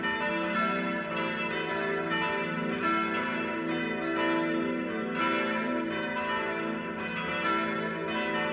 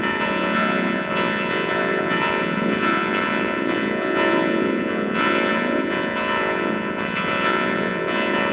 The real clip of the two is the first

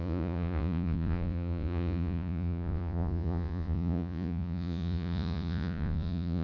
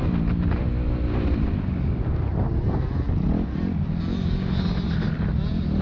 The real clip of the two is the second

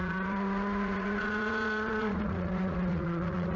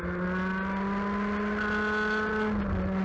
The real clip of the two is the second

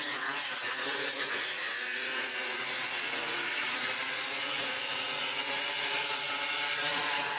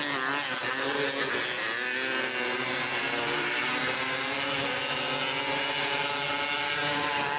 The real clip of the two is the second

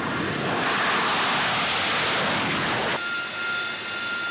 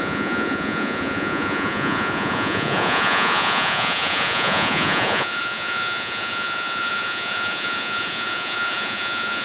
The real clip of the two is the first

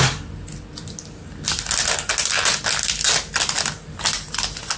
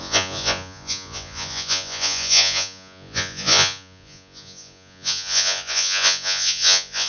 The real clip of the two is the first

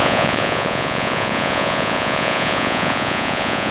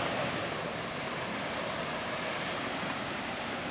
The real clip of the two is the second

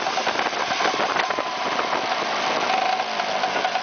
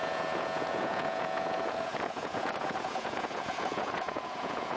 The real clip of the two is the first